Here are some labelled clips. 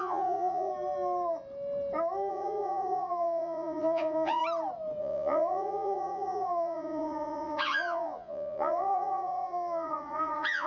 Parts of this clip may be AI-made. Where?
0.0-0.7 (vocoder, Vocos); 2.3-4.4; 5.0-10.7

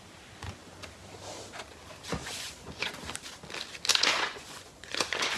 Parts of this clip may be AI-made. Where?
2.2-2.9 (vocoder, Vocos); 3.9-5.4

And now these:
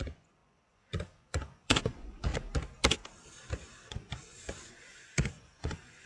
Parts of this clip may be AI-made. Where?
0.0-2.3 (vocoder, Vocos); 3.9-6.1

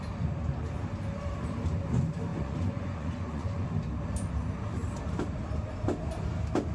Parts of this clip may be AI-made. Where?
2.3-3.7 (vocoder, Vocos)